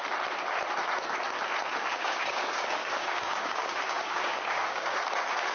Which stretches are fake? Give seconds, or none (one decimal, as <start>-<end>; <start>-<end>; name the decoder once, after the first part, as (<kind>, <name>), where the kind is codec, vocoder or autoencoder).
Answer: 1.7-5.0 (codec, DAC)